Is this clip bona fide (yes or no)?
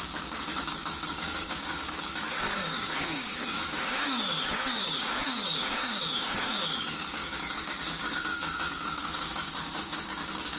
no